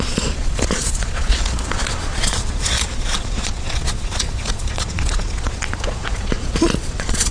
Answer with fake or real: fake